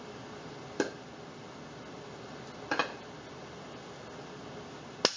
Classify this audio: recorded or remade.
recorded